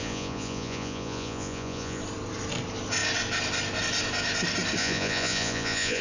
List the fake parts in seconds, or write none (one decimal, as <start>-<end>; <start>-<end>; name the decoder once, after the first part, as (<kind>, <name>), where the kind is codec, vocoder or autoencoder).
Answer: 0.0-2.0 (vocoder, Vocos); 4.8-6.0

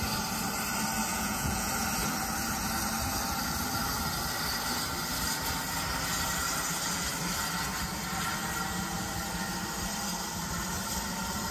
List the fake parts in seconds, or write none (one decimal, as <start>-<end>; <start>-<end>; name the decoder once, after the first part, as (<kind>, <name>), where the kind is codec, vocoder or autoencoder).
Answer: 1.1-1.7 (vocoder, Vocos)